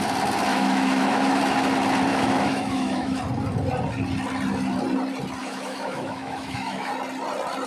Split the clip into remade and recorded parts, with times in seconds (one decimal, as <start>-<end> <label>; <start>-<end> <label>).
0.0-0.5 recorded; 0.5-1.4 remade; 1.4-2.1 recorded; 2.1-3.2 remade; 3.2-5.4 recorded; 5.4-6.9 remade; 6.9-7.7 recorded